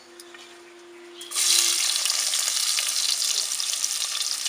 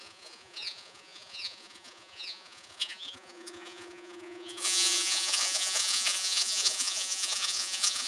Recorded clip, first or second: first